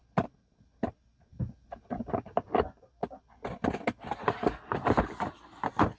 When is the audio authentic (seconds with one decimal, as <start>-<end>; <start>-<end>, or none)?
0.0-6.0